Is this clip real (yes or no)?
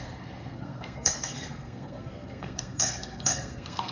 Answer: no